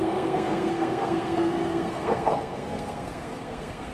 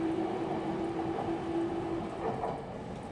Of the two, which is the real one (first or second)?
second